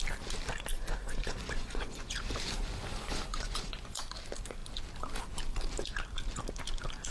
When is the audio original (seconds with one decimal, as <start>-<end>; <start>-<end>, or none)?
0.0-0.7; 4.0-7.1